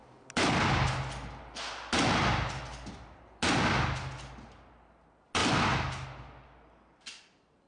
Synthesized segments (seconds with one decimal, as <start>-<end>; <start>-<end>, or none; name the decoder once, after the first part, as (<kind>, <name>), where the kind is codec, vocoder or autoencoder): none